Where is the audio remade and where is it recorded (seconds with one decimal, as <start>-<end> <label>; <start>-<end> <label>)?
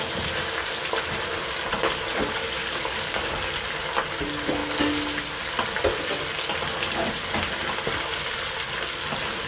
0.0-2.6 recorded; 2.6-3.3 remade; 3.3-9.5 recorded